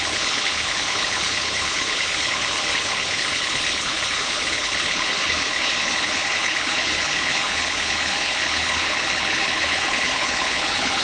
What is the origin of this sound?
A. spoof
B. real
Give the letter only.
A